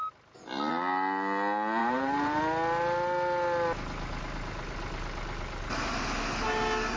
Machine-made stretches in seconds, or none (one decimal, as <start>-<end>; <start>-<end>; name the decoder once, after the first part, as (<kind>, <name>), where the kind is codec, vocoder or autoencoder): 1.8-2.4 (vocoder, BigVGAN v2)